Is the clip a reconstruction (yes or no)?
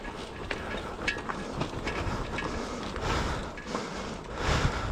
no